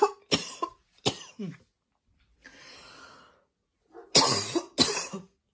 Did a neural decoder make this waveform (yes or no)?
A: no